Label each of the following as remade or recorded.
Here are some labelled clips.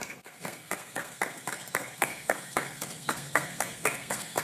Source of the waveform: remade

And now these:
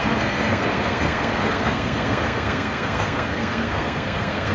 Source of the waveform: remade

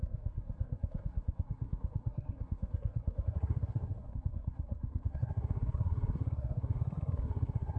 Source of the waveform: remade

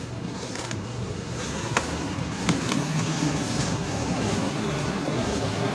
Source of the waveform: remade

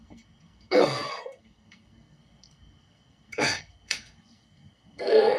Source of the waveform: remade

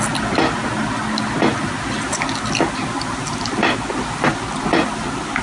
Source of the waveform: recorded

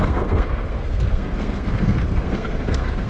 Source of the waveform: remade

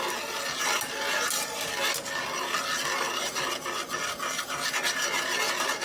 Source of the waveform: recorded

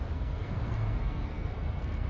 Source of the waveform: remade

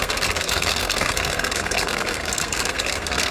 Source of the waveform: remade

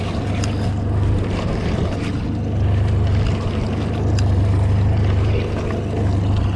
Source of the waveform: recorded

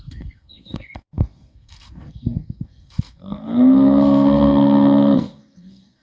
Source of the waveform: remade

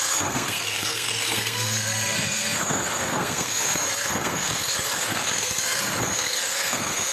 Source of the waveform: remade